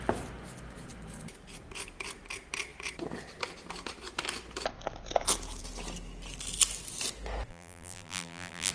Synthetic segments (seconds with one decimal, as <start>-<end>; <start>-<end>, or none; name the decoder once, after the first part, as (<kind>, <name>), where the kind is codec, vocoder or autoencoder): 7.5-8.7 (vocoder, BigVGAN v2)